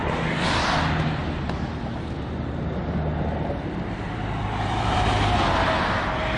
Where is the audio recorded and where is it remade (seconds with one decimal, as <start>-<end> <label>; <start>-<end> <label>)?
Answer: 0.0-1.2 recorded; 1.2-6.4 remade